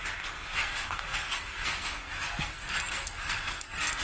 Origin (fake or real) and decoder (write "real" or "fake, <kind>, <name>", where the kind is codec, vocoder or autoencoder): fake, codec, SNAC